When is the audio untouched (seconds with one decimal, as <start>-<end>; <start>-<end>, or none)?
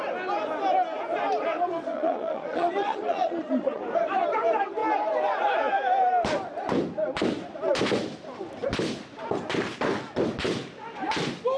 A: 0.0-1.9; 3.8-11.6